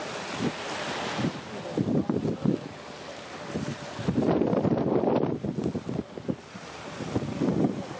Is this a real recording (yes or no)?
yes